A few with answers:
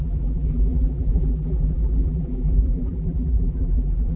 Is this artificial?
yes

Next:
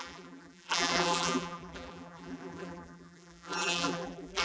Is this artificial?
yes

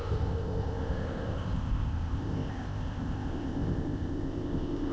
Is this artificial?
yes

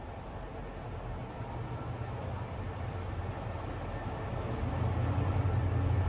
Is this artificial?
no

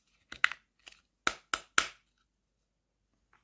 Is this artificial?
no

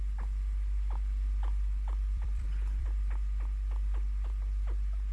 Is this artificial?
yes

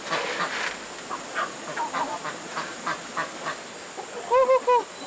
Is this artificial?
no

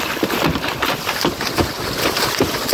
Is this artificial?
no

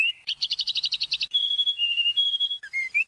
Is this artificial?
yes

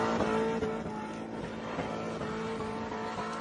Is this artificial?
no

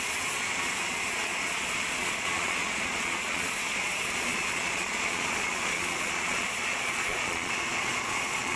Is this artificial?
yes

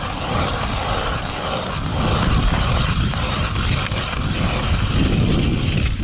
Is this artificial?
no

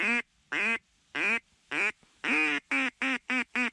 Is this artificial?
no